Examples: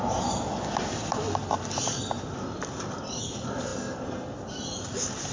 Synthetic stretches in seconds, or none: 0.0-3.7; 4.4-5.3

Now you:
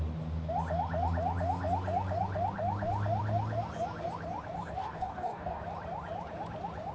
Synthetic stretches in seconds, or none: 4.8-5.6